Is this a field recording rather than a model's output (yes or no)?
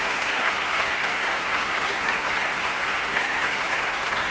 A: no